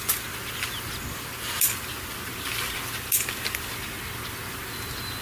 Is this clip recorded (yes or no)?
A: yes